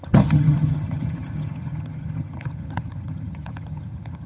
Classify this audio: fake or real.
fake